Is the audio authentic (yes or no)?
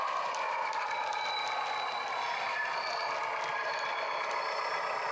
yes